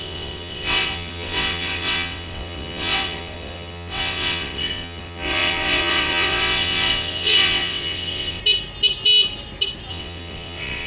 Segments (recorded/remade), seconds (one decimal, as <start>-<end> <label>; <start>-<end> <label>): 0.0-8.4 remade; 8.4-9.9 recorded; 9.9-10.9 remade